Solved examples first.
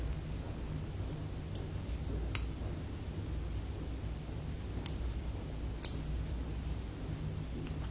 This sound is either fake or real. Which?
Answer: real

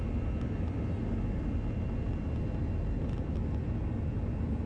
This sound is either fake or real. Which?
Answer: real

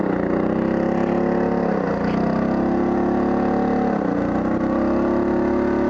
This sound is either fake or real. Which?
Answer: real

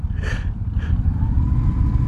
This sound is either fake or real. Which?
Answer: real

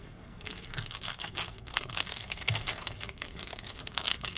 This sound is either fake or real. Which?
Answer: fake